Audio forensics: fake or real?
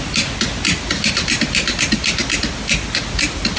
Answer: real